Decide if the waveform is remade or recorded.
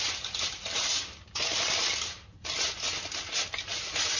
recorded